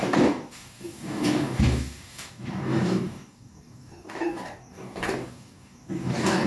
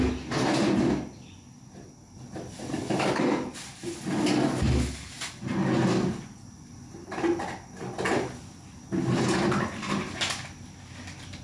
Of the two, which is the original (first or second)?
second